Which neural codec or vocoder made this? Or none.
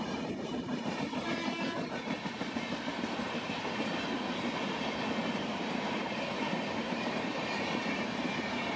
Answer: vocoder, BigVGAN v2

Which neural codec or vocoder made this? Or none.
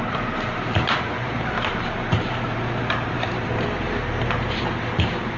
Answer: vocoder, BigVGAN v2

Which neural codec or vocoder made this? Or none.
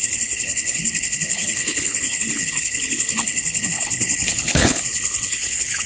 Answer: codec, HILCodec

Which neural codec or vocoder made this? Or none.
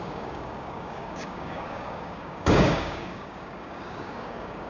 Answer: codec, DAC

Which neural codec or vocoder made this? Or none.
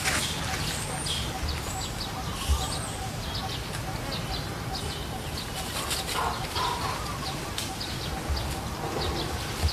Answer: none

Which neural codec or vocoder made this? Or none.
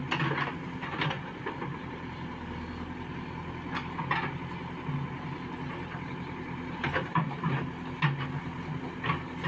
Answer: none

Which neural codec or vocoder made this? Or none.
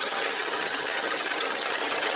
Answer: vocoder, HiFi-GAN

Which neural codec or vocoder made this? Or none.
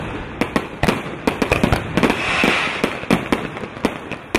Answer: none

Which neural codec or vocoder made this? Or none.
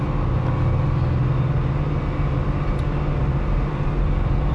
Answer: none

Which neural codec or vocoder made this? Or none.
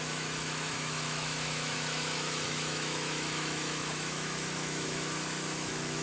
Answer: autoencoder, DAC-VAE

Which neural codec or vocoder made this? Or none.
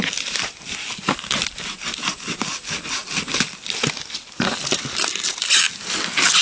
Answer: none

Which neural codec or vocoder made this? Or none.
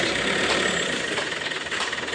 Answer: none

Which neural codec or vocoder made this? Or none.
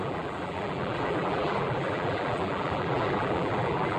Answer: vocoder, BigVGAN v2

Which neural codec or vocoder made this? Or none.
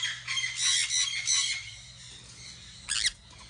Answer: none